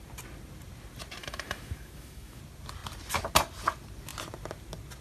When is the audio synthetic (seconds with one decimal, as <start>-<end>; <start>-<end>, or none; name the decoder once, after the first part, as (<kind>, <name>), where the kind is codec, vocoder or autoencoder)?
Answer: 1.2-2.4 (autoencoder, DAC-VAE)

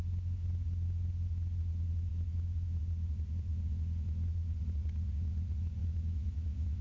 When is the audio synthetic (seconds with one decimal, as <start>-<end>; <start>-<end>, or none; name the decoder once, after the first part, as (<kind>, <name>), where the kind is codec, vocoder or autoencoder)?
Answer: 2.1-2.8 (autoencoder, DAC-VAE); 5.8-6.8

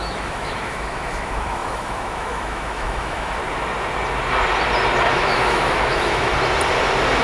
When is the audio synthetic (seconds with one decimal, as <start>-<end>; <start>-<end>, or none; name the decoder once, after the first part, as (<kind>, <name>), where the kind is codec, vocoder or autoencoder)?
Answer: 0.0-3.4 (autoencoder, DAC-VAE); 5.1-6.3

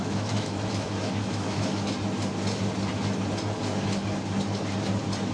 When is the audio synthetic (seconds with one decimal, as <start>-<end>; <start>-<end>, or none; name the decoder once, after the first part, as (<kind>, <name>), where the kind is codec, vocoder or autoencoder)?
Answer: 0.0-1.9 (autoencoder, DAC-VAE)